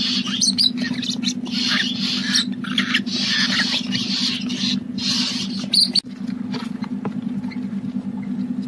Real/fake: real